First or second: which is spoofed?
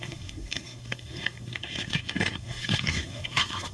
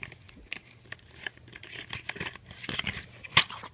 first